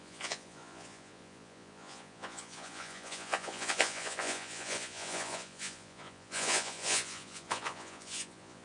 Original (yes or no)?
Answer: no